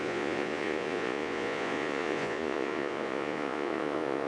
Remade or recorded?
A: remade